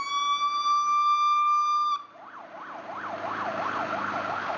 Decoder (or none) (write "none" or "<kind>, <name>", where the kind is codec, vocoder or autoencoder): none